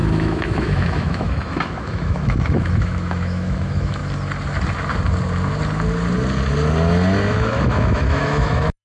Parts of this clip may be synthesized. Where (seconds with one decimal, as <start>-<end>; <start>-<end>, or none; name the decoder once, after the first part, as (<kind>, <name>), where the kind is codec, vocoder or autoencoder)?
0.0-4.0 (autoencoder, DAC-VAE); 7.3-8.8